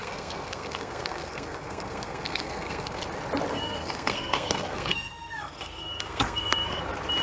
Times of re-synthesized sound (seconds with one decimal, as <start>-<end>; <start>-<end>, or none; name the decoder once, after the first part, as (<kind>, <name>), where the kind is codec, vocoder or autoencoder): 0.0-3.0 (codec, SNAC); 3.5-6.8